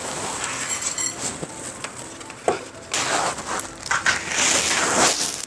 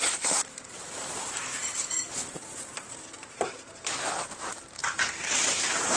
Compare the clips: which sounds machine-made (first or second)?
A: second